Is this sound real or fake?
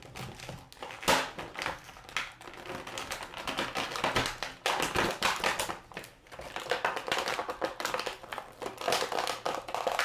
real